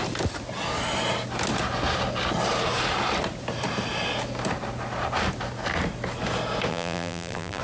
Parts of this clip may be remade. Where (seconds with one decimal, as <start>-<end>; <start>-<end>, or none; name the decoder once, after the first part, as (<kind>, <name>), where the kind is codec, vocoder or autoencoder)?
6.7-7.6 (vocoder, BigVGAN v2)